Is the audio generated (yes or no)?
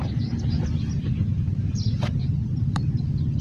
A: yes